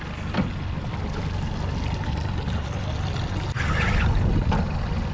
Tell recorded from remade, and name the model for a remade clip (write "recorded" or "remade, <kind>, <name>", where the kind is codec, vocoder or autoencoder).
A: recorded